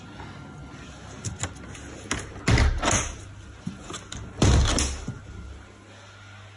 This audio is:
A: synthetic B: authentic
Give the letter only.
B